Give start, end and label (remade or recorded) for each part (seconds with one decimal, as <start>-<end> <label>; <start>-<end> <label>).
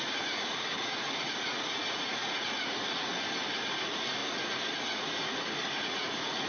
0.0-3.1 remade; 3.1-3.8 recorded; 3.8-6.5 remade